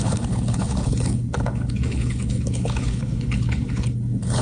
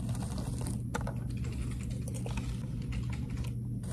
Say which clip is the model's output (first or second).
first